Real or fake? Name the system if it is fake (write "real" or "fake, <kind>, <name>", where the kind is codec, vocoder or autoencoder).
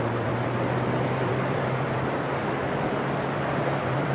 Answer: fake, vocoder, BigVGAN v2